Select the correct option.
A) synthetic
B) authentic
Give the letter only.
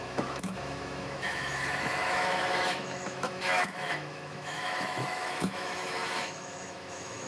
A